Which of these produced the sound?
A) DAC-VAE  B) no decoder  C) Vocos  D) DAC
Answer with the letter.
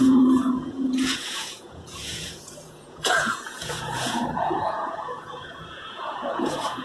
C